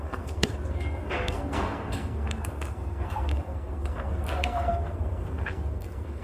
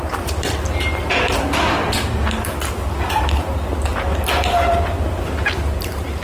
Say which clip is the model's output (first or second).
first